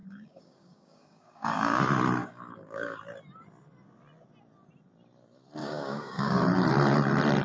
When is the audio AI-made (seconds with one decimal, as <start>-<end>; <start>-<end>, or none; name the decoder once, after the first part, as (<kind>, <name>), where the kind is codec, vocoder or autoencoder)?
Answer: 0.0-1.8 (codec, DAC); 2.2-3.0; 5.6-6.4